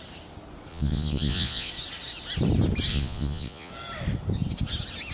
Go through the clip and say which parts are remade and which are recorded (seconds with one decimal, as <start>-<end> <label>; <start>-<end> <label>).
0.0-0.7 recorded; 0.7-1.7 remade; 1.7-2.9 recorded; 2.9-3.7 remade; 3.7-5.1 recorded